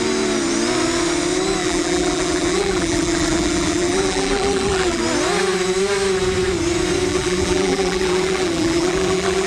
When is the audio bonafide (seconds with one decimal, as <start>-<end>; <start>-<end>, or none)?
0.0-1.6; 5.0-7.1